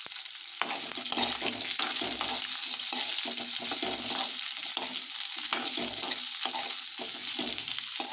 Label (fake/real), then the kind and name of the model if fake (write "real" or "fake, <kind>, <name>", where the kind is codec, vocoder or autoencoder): real